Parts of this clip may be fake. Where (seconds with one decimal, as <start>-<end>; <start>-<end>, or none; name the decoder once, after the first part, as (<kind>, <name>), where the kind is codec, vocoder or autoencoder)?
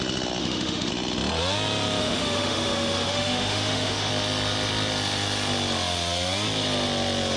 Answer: 0.4-0.9 (autoencoder, DAC-VAE); 2.0-4.1